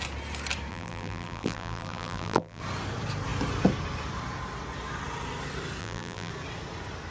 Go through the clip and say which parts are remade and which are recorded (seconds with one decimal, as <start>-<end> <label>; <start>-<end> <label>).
0.0-0.7 recorded; 0.7-2.6 remade; 2.6-5.8 recorded; 5.8-6.3 remade; 6.3-7.1 recorded